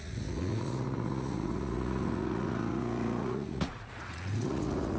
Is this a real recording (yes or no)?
no